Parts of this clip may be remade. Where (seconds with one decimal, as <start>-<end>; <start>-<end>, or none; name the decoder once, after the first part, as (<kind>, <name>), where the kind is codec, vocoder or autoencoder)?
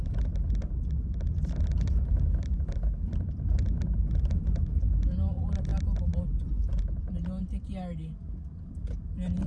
none